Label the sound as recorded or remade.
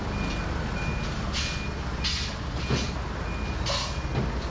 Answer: recorded